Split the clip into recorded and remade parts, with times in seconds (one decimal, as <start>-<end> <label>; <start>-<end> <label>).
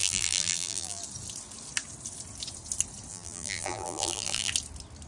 0.0-1.0 remade; 1.0-3.1 recorded; 3.1-4.5 remade; 4.5-5.1 recorded